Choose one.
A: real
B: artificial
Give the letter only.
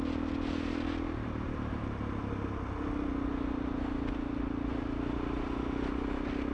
A